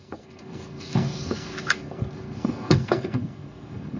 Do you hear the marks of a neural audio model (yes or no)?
yes